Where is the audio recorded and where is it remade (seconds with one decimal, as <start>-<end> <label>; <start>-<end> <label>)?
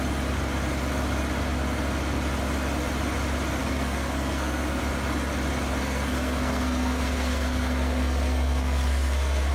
0.0-3.6 recorded; 3.6-4.8 remade; 4.8-5.8 recorded; 5.8-9.5 remade